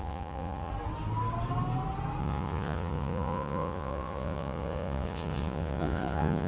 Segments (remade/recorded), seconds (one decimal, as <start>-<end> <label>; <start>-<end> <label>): 0.0-0.7 remade; 0.7-2.2 recorded; 2.2-6.5 remade